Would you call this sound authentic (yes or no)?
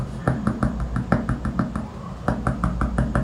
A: yes